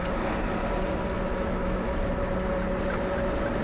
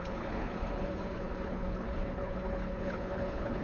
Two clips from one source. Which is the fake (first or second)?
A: second